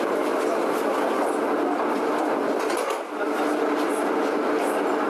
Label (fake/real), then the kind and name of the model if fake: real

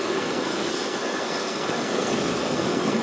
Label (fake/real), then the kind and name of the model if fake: fake, codec, SNAC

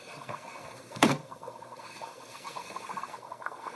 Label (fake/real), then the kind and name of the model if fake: fake, codec, SNAC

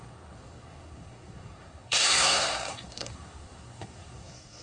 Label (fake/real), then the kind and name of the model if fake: fake, codec, SNAC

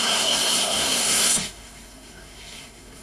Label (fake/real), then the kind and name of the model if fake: fake, codec, SNAC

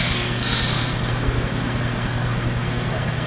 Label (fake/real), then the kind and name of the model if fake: fake, codec, SNAC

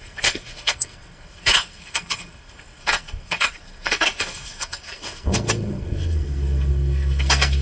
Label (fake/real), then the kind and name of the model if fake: fake, codec, SNAC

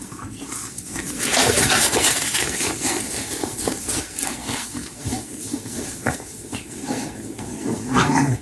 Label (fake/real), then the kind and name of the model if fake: fake, codec, SNAC